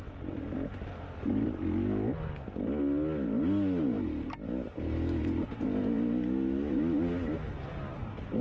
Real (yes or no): yes